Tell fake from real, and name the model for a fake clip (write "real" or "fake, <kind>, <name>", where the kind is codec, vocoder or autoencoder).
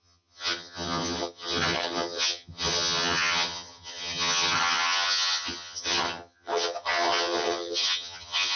fake, vocoder, HiFi-GAN